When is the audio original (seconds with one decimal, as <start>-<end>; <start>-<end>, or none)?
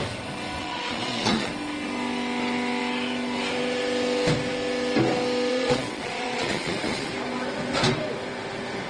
0.0-0.6; 1.5-5.5; 7.1-8.9